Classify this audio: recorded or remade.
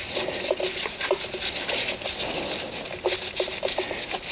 recorded